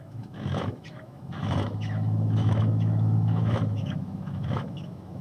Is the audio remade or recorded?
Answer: remade